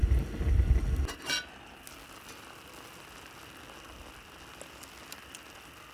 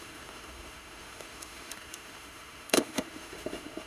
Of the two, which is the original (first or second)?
first